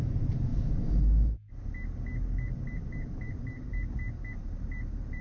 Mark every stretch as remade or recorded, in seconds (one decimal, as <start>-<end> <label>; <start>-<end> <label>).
0.0-0.5 remade; 0.5-2.8 recorded; 2.8-3.7 remade; 3.7-4.3 recorded; 4.3-5.2 remade